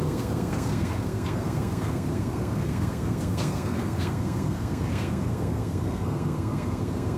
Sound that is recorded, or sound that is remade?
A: remade